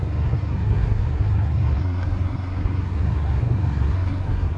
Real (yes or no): no